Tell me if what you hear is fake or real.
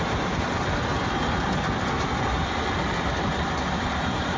real